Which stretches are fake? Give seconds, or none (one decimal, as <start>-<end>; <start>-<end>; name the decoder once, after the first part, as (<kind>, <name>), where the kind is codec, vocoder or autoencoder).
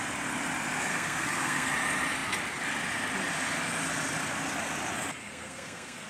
0.9-1.7 (codec, SNAC); 5.2-6.1